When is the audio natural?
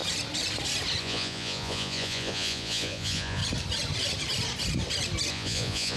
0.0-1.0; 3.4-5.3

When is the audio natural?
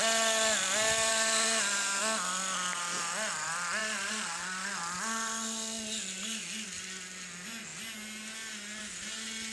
0.0-3.8; 4.7-9.5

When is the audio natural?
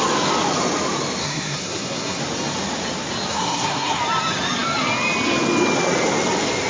0.0-1.2; 2.2-3.3; 4.0-6.7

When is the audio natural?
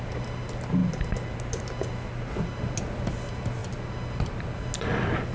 0.0-5.3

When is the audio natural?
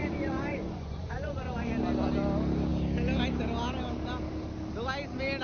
1.7-5.4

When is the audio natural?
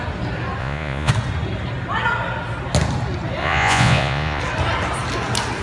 0.0-0.6; 1.1-3.4; 4.4-5.6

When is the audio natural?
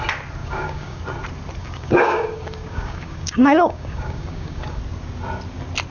0.0-0.4; 1.0-1.6; 4.8-5.9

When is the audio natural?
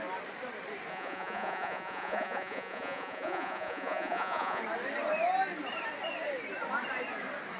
0.0-0.9; 4.6-7.6